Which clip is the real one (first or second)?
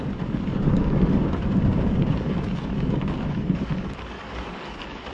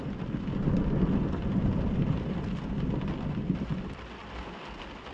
second